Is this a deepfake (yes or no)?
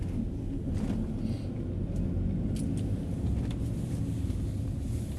no